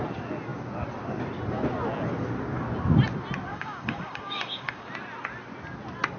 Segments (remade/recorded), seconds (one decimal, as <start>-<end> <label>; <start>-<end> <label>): 0.0-3.5 recorded; 3.5-4.9 remade; 4.9-6.2 recorded